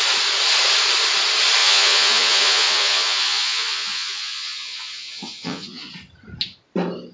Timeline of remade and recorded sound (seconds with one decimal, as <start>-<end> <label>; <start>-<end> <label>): 0.0-1.6 recorded; 1.6-5.9 remade; 5.9-7.1 recorded